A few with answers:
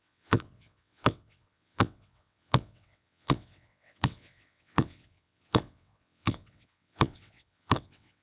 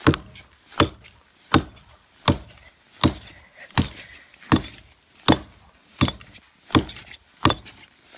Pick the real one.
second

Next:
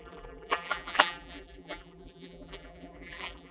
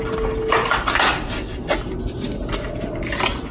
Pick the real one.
second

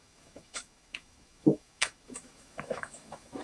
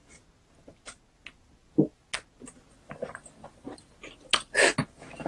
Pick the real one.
second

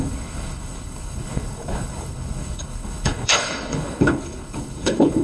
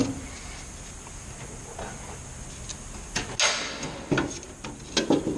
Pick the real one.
second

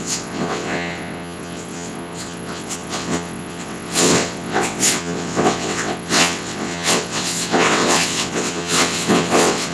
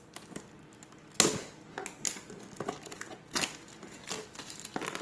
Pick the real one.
second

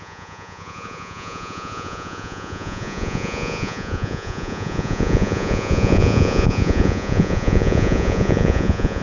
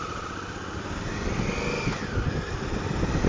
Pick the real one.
second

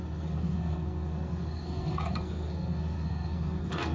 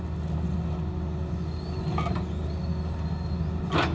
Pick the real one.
second